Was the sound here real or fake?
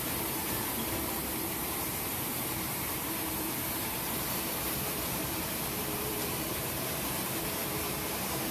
fake